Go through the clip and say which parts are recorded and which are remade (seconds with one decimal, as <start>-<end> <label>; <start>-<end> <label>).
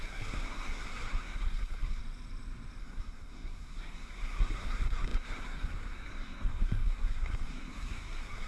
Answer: 0.0-2.0 remade; 2.0-2.8 recorded; 2.8-8.5 remade